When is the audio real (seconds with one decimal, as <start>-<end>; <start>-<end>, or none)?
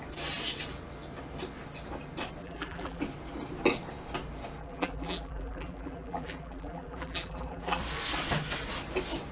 0.0-2.4; 3.0-4.6; 7.8-9.3